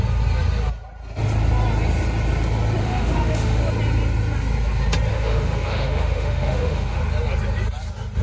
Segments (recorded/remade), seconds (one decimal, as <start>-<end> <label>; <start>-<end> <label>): 0.0-2.8 recorded; 2.8-3.6 remade; 3.6-5.1 recorded; 5.1-7.0 remade; 7.0-8.2 recorded